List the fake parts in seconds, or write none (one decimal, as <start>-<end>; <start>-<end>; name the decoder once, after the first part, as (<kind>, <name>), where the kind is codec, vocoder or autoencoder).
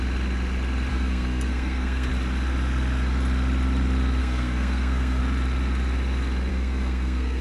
0.9-2.1 (codec, SNAC); 4.2-5.2; 6.5-7.4